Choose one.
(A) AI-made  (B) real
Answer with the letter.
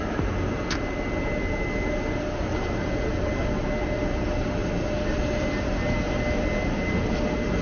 B